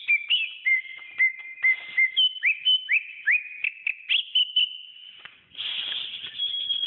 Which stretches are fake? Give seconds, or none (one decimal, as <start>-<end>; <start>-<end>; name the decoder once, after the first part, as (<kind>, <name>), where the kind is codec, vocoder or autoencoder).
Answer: 5.0-6.0 (vocoder, Vocos)